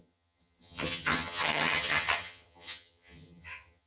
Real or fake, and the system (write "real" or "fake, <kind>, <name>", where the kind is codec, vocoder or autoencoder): fake, vocoder, HiFi-GAN